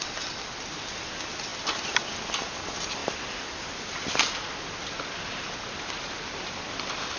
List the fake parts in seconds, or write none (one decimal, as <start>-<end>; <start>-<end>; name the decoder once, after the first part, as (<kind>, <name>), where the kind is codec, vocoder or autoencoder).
none